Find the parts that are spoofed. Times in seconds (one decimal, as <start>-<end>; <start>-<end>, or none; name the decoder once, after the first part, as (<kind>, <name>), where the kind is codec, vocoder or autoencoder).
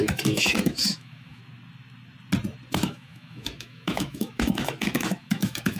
0.0-1.4 (autoencoder, DAC-VAE); 2.7-5.8